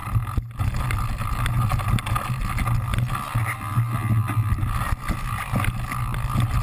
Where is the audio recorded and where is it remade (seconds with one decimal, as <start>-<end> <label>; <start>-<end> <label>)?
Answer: 0.0-6.6 recorded

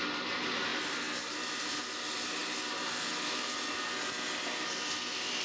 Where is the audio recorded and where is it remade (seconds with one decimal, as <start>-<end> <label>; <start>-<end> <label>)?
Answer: 0.0-5.4 recorded

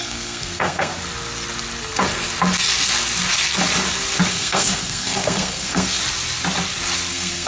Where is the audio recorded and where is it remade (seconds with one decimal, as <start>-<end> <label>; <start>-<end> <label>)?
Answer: 0.0-0.9 remade; 0.9-4.3 recorded; 4.3-6.0 remade; 6.0-7.1 recorded; 7.1-7.5 remade

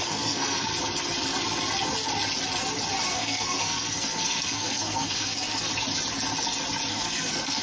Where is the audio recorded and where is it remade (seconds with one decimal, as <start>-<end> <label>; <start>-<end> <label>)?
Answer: 0.0-0.7 remade; 0.7-3.1 recorded; 3.1-5.7 remade; 5.7-6.9 recorded; 6.9-7.6 remade

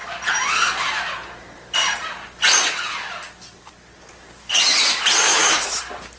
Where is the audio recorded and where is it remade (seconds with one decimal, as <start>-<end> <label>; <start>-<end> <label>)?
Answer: 0.0-5.3 recorded; 5.3-5.8 remade; 5.8-6.2 recorded

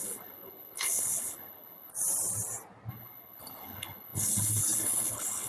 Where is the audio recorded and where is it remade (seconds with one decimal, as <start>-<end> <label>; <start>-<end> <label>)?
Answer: 0.0-1.9 remade; 1.9-2.9 recorded; 2.9-5.5 remade

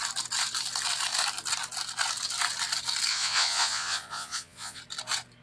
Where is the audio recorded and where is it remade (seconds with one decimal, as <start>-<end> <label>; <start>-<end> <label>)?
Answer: 0.0-3.1 recorded; 3.1-4.8 remade; 4.8-5.4 recorded